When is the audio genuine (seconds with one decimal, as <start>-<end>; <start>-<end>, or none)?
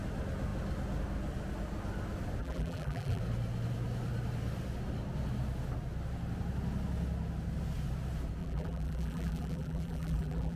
0.0-2.4; 3.2-8.4